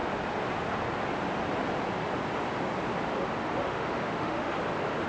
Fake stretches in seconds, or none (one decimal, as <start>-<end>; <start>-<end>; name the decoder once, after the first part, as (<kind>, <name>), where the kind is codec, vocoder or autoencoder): 3.6-4.5 (autoencoder, DAC-VAE)